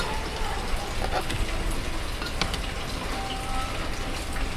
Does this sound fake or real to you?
real